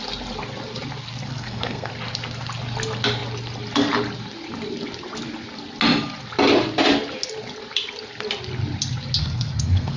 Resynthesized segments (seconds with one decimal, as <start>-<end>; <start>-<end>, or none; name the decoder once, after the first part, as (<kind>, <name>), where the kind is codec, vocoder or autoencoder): 1.3-1.9 (codec, SNAC); 9.2-10.0

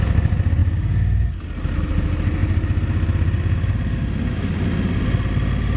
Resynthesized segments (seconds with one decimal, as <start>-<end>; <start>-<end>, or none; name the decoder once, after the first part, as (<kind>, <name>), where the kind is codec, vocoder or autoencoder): none

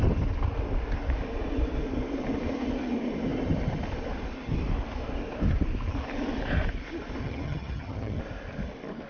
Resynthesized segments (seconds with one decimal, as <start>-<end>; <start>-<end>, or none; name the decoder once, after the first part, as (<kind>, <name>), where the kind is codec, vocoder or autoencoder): 7.2-8.2 (vocoder, HiFi-GAN)

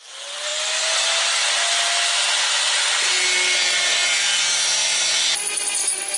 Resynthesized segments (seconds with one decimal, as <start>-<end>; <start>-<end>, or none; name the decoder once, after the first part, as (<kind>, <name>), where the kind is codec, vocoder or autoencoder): none

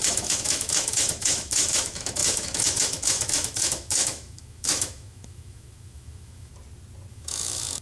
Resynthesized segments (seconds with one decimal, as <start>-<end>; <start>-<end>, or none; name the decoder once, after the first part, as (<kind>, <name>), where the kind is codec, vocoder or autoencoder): 0.0-6.5 (autoencoder, DAC-VAE); 7.1-7.8